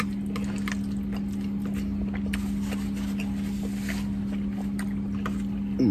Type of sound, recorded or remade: recorded